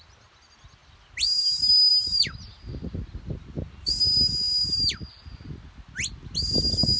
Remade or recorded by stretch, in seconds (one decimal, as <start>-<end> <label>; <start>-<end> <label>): 0.0-7.0 recorded